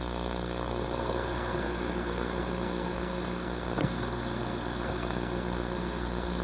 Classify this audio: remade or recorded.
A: remade